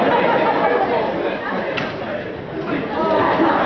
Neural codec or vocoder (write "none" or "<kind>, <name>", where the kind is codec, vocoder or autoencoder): none